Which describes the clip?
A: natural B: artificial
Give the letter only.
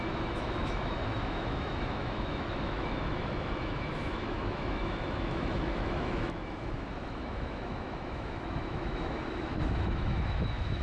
B